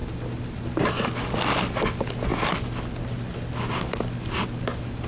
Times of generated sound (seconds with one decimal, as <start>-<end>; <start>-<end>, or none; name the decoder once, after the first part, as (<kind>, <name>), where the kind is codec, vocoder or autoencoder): none